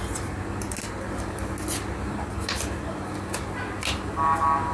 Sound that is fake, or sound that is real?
real